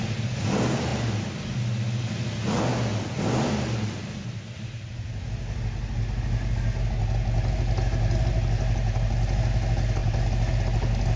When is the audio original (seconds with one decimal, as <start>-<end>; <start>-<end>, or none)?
0.0-11.2